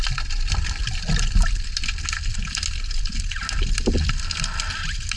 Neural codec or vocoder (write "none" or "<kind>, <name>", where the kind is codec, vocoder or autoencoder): none